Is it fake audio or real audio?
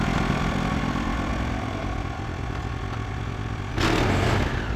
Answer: real